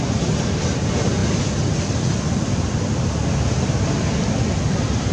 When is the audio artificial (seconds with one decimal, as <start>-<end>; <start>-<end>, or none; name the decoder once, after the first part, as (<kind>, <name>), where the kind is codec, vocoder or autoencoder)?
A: none

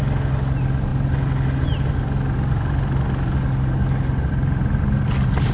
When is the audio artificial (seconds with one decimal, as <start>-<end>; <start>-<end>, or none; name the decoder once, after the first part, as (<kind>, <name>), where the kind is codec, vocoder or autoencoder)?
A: none